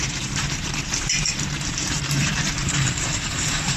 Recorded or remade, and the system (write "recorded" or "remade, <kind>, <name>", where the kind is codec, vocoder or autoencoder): remade, vocoder, BigVGAN v2